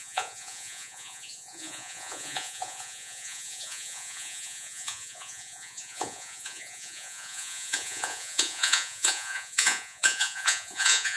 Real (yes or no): no